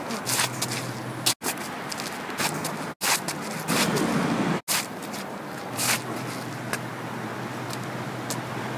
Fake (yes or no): no